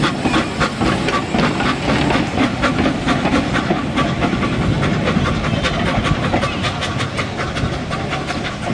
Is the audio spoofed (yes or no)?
no